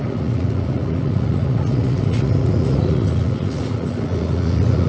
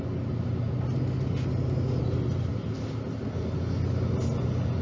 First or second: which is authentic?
second